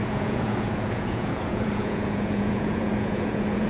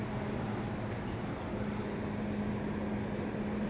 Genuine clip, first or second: second